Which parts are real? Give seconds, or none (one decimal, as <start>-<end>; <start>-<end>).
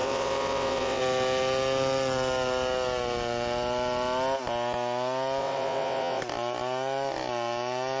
1.0-5.4; 6.2-8.0